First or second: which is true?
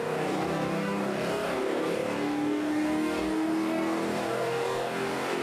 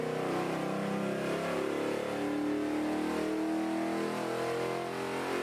second